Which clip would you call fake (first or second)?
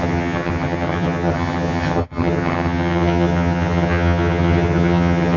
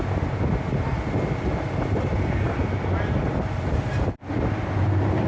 first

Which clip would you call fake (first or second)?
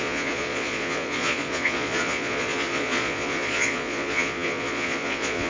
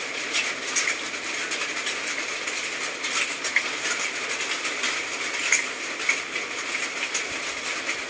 first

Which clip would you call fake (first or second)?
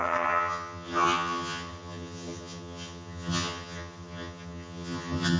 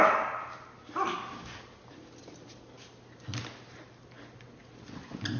first